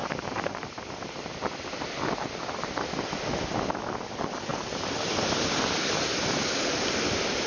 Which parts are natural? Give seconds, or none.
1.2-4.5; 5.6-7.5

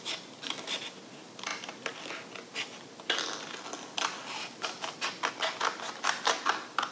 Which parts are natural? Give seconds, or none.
0.0-6.9

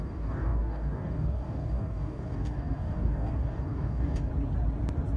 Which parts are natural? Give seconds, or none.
4.3-5.2

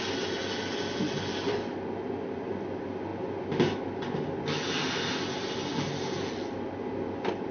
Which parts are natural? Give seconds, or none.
0.0-7.5

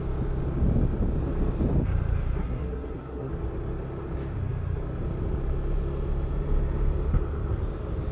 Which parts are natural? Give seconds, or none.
0.0-2.4; 3.3-8.1

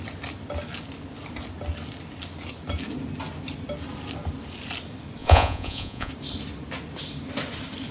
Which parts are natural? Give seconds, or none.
0.0-5.2; 6.1-7.9

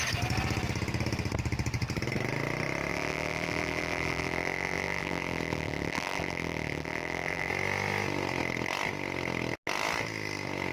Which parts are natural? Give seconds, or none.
0.0-2.9; 7.5-10.7